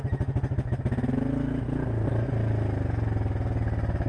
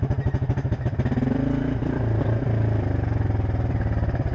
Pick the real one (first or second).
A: first